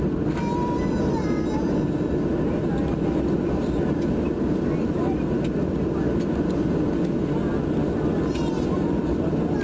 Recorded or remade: recorded